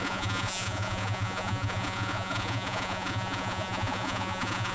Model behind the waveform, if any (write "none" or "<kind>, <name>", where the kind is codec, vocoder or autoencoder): vocoder, Vocos